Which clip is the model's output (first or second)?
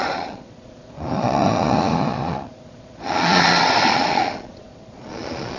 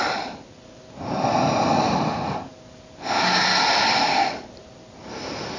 first